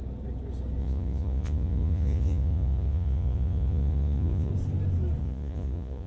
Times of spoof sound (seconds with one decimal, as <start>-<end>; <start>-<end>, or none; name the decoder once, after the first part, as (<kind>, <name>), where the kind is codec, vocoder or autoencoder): 0.8-4.5 (vocoder, Vocos); 5.2-6.1

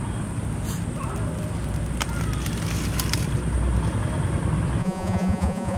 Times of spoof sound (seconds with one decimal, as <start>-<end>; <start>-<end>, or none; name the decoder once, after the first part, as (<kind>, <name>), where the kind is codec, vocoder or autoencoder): 4.8-5.8 (vocoder, Vocos)

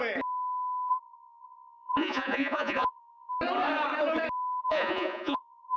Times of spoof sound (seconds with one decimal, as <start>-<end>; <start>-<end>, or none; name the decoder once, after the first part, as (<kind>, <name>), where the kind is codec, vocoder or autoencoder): 0.9-3.3 (vocoder, Vocos); 4.6-5.8

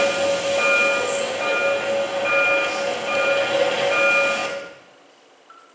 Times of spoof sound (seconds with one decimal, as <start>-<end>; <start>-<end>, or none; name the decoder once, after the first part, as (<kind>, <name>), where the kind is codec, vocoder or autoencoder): none

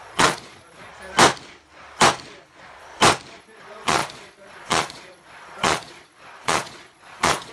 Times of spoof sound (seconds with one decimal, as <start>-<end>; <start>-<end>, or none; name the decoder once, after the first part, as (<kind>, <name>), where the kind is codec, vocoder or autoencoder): 0.0-0.9 (vocoder, Vocos); 3.4-7.5

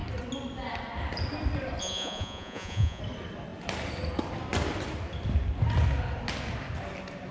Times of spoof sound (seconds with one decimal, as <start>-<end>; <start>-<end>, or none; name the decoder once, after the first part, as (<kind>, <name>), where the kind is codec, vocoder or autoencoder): 1.8-3.0 (vocoder, Vocos)

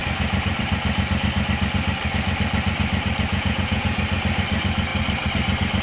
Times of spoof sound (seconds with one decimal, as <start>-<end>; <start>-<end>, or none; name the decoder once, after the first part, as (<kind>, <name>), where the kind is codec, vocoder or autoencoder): 3.3-4.0 (vocoder, Vocos)